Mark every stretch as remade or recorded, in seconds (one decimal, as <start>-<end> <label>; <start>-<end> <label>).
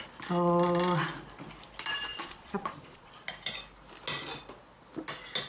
0.0-2.1 recorded; 2.1-3.1 remade; 3.1-5.5 recorded